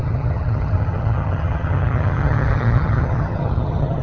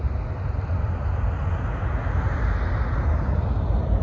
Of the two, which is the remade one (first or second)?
first